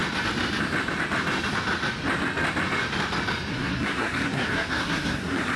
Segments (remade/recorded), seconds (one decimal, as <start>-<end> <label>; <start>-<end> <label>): 0.0-3.5 recorded; 3.5-5.6 remade

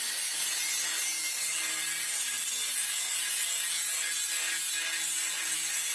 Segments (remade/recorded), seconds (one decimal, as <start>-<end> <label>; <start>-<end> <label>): 0.0-5.9 recorded

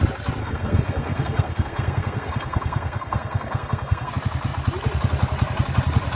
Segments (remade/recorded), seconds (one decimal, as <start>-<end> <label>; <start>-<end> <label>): 0.0-0.4 recorded; 0.4-4.1 remade; 4.1-6.2 recorded

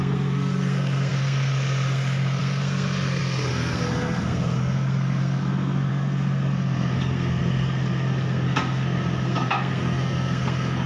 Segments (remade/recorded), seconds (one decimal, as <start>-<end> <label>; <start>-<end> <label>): 0.0-10.9 remade

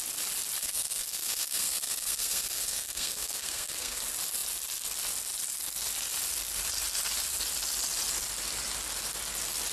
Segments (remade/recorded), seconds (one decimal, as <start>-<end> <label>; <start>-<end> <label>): 0.0-0.6 recorded; 0.6-4.0 remade; 4.0-9.7 recorded

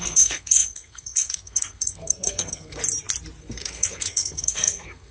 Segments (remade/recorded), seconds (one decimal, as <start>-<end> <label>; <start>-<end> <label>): 0.0-2.8 remade; 2.8-3.4 recorded; 3.4-5.1 remade

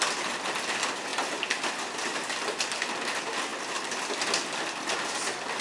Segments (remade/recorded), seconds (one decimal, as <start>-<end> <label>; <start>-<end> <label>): 0.0-5.6 recorded